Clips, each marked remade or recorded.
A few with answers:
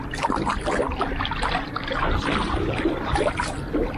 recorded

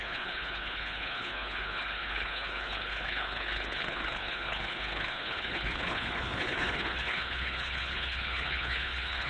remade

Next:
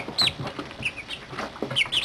recorded